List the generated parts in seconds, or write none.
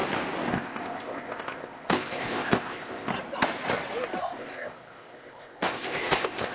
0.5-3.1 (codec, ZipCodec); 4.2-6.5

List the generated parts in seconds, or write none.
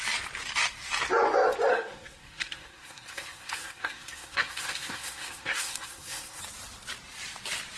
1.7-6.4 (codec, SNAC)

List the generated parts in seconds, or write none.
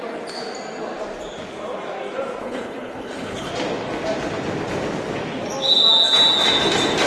2.4-3.5 (codec, HILCodec)